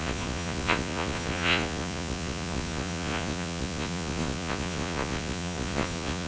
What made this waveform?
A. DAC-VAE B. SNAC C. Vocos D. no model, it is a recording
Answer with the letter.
C